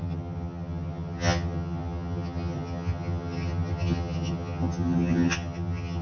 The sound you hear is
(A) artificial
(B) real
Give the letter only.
A